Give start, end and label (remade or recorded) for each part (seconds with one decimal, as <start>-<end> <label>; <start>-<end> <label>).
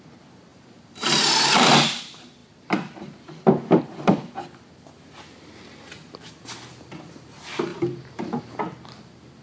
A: 0.0-0.5 recorded; 0.5-2.0 remade; 2.0-7.7 recorded; 7.7-8.4 remade; 8.4-9.4 recorded